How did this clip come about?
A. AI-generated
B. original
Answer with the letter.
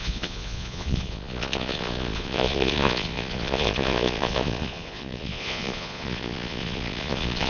A